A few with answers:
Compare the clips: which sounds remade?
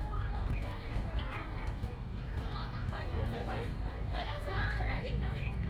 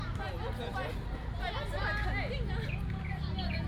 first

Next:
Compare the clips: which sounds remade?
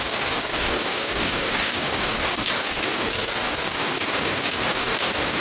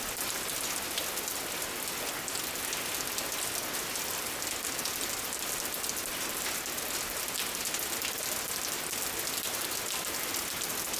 first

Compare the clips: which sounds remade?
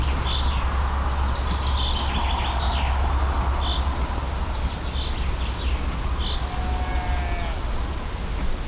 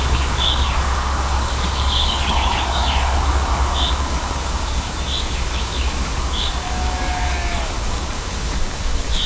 second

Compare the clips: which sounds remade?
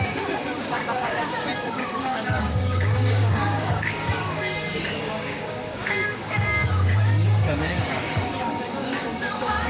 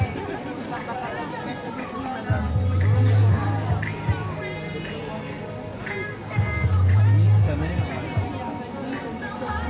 first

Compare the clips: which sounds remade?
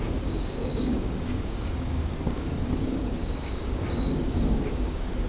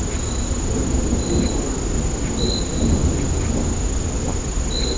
first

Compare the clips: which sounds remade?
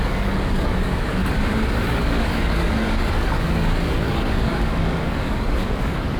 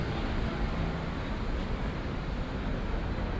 first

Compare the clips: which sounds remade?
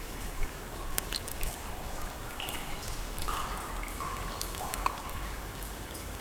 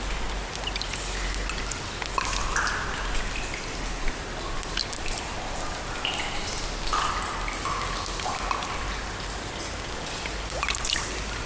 first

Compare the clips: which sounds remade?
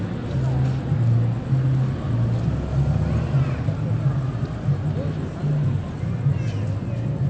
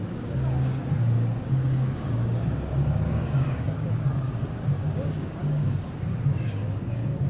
second